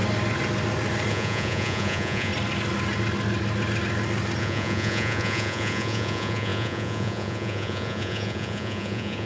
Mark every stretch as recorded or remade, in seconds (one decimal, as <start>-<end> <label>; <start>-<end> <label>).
0.0-1.1 recorded; 1.1-2.3 remade; 2.3-4.4 recorded; 4.4-9.3 remade